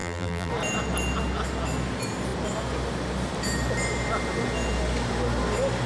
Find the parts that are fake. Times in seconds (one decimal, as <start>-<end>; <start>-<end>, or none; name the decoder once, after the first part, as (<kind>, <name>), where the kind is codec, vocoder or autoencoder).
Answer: 0.0-0.5 (vocoder, BigVGAN v2)